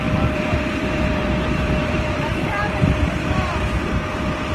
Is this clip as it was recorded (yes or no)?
no